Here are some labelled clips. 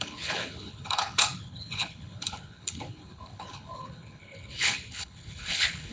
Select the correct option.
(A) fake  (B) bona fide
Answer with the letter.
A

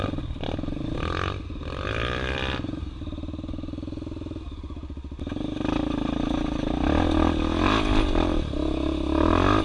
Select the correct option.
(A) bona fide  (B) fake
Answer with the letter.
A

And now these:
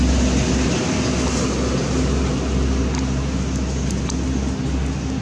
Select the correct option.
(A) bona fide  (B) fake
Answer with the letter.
A